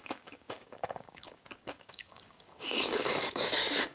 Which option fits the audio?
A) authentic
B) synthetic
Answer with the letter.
B